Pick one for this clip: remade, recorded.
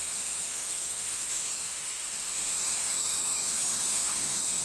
remade